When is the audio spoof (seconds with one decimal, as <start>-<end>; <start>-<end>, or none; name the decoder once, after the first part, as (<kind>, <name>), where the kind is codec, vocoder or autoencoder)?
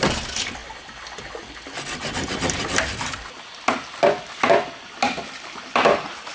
none